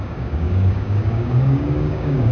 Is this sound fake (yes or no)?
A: yes